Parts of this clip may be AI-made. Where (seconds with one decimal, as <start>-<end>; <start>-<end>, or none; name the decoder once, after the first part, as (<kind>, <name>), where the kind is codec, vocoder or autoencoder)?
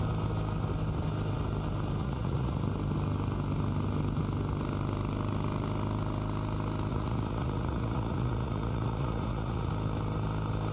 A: 2.0-2.6 (vocoder, Vocos); 6.9-9.7